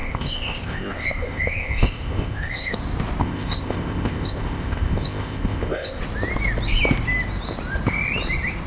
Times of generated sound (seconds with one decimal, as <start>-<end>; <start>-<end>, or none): 0.0-2.8; 3.2-6.0